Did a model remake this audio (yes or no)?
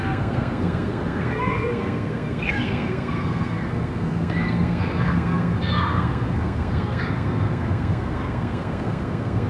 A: yes